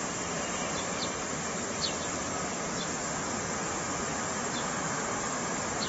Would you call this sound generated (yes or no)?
no